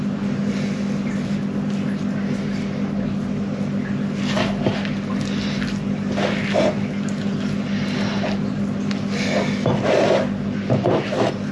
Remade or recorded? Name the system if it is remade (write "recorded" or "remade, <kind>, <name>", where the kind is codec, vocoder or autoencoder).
recorded